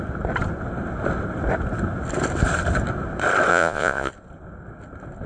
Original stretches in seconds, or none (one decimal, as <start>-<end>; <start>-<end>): 0.0-3.5; 4.1-5.3